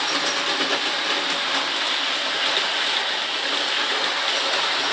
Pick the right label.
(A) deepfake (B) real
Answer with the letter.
B